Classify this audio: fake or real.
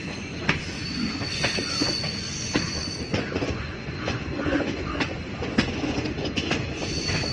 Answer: fake